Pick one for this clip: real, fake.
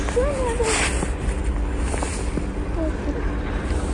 real